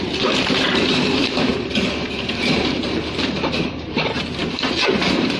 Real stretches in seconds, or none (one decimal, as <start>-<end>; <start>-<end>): none